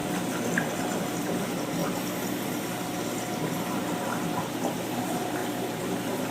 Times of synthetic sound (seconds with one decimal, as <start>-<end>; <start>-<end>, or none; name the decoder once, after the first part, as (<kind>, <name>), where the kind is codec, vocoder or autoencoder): 1.0-1.8 (vocoder, BigVGAN v2); 4.9-5.4